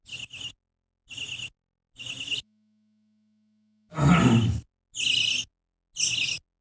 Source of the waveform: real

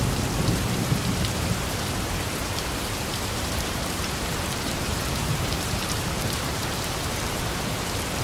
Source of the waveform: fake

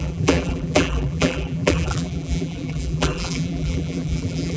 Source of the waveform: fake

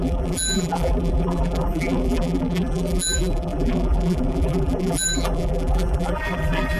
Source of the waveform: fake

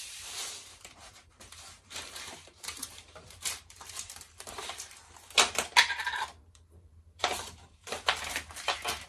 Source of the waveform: fake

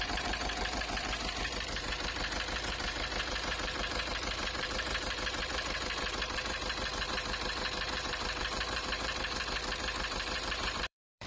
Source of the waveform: fake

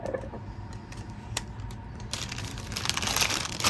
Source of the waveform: fake